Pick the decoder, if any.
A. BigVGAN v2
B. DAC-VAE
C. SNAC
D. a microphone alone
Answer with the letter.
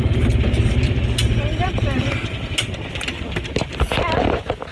D